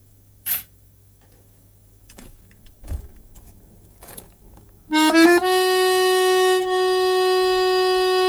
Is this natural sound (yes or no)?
no